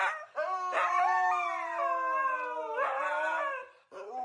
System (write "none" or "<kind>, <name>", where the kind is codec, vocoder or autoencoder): none